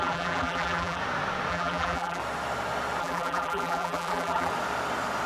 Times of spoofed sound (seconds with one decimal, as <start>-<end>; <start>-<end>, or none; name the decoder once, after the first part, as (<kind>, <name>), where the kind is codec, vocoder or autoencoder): 0.0-1.0 (vocoder, BigVGAN v2); 1.5-2.2; 3.0-4.5